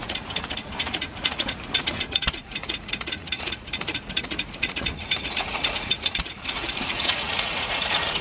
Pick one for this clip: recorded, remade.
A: remade